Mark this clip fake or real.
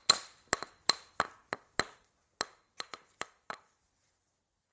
real